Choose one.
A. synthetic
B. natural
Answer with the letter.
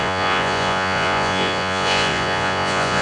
A